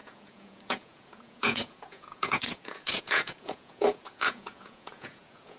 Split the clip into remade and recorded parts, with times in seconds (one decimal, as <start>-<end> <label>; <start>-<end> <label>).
0.0-5.6 remade